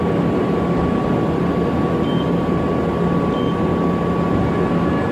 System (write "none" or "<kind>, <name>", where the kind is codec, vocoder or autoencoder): none